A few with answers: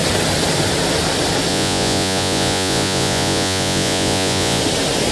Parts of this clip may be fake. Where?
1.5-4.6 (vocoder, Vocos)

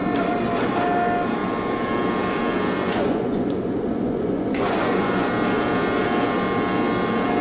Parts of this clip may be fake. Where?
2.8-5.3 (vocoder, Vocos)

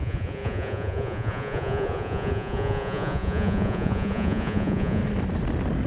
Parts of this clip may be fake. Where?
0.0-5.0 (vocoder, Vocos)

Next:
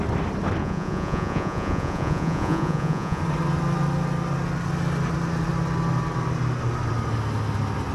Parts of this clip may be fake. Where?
0.6-3.2 (vocoder, Vocos)

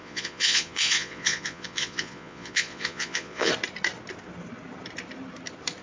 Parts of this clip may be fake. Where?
0.0-3.5 (vocoder, Vocos)